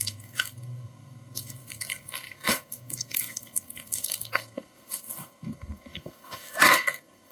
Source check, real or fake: fake